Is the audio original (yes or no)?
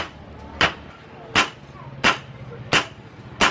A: yes